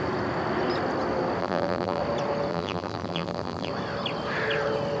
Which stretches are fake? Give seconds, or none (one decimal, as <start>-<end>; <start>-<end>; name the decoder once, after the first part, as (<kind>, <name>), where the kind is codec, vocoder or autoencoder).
1.4-2.0 (vocoder, BigVGAN v2); 2.5-3.7